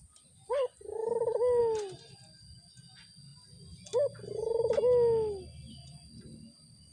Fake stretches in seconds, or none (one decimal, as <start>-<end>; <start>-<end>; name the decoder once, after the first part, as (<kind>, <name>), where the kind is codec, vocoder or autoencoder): none